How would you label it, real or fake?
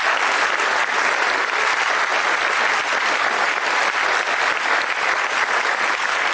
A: real